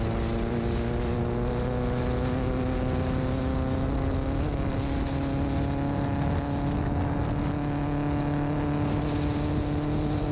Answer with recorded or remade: recorded